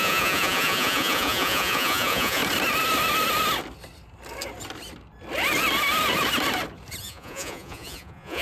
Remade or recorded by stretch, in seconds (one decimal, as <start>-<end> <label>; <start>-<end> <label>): 0.0-2.4 remade; 2.4-7.0 recorded; 7.0-8.4 remade